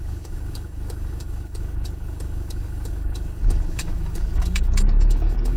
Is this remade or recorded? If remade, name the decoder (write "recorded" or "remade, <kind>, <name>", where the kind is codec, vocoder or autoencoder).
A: remade, codec, DAC